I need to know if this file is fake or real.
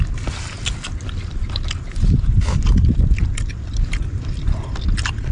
real